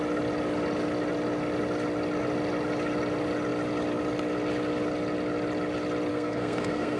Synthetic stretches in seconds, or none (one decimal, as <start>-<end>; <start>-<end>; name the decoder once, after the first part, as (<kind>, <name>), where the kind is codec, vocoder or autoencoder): 6.1-7.0 (codec, SNAC)